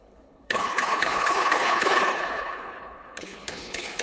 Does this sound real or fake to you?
fake